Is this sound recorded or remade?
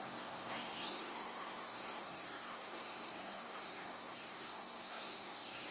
remade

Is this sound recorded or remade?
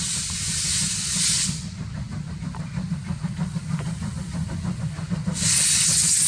recorded